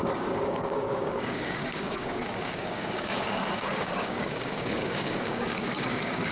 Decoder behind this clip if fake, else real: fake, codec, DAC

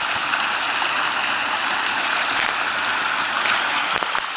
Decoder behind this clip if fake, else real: real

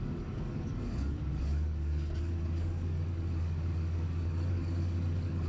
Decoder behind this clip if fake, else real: fake, codec, DAC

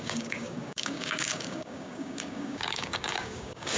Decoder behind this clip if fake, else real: fake, codec, DAC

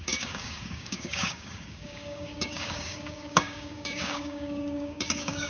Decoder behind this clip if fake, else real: fake, codec, DAC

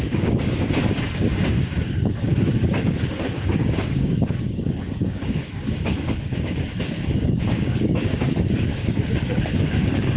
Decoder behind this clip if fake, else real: fake, codec, DAC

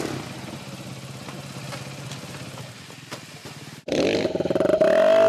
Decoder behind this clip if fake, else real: real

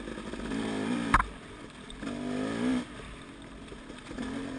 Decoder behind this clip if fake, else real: real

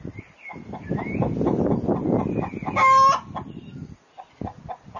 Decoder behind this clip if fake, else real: real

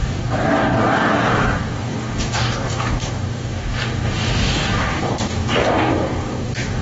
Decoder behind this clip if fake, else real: fake, codec, DAC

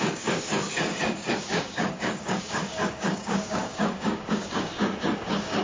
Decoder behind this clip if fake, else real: fake, codec, DAC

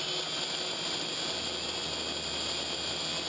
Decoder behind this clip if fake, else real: real